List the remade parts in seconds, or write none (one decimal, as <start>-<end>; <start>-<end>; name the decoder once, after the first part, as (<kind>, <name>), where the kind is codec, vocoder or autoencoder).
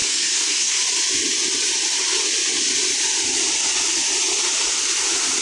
0.0-0.8 (codec, SNAC)